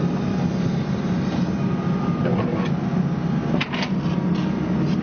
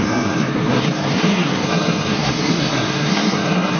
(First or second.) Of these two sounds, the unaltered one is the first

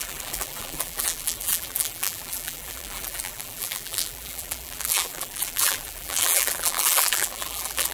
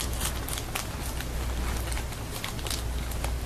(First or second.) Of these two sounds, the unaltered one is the second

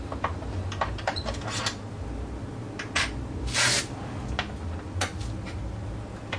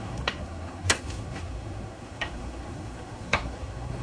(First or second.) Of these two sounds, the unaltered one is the first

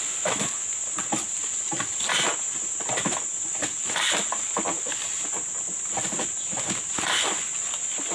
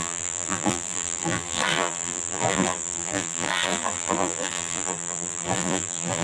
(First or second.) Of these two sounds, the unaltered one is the first